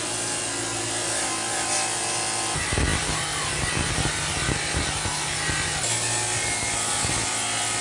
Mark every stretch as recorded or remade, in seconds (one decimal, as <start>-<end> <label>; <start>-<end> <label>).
0.0-7.8 recorded